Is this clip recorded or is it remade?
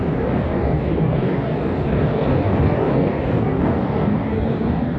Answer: remade